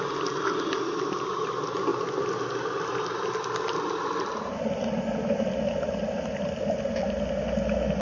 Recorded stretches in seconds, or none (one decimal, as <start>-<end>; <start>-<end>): 0.0-8.0